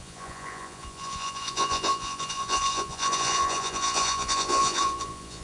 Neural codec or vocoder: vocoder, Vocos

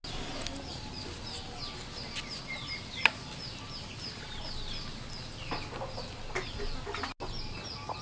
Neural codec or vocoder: none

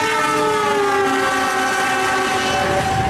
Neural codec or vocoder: none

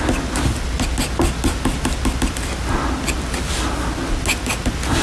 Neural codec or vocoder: none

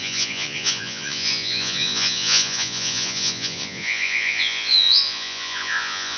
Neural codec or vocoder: vocoder, Vocos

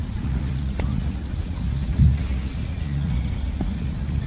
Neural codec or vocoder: vocoder, Vocos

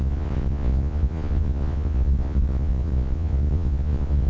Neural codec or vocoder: vocoder, Vocos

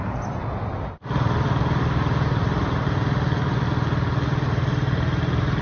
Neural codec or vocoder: none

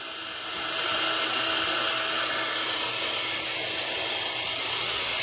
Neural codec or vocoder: none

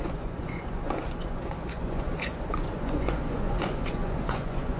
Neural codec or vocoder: vocoder, Vocos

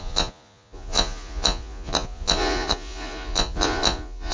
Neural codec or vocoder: vocoder, Vocos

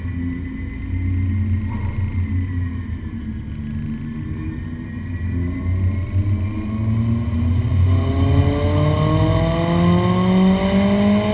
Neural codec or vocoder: none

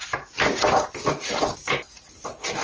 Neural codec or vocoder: none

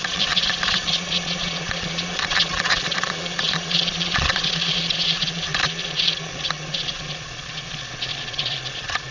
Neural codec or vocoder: vocoder, Vocos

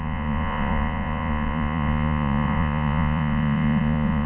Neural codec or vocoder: vocoder, Vocos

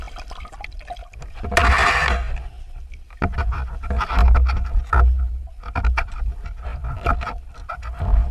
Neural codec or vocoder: none